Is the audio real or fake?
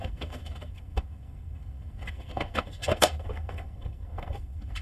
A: fake